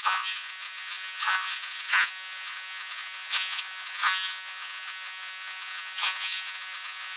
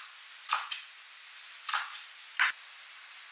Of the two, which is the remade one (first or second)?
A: first